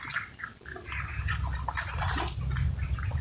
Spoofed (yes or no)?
no